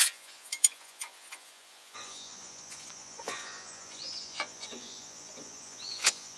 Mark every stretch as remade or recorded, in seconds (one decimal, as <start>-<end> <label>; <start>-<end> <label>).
0.0-6.4 remade